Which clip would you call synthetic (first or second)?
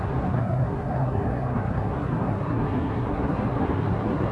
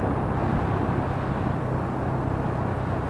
first